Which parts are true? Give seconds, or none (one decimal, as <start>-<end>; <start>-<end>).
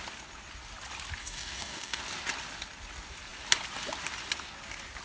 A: 0.0-1.2; 2.0-5.0